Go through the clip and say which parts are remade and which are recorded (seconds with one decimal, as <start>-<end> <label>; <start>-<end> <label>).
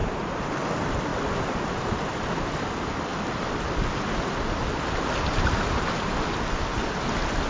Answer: 0.0-0.6 remade; 0.6-7.5 recorded